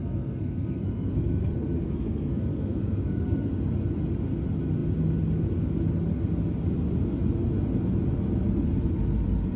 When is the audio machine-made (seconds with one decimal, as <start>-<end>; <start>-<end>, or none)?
0.0-3.5